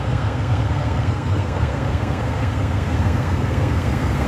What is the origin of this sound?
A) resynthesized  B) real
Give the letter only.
A